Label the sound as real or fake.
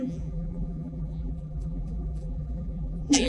fake